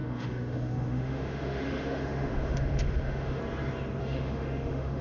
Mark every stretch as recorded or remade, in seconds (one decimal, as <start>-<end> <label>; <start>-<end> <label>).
0.0-3.4 remade; 3.4-4.0 recorded; 4.0-5.0 remade